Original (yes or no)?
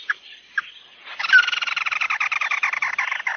yes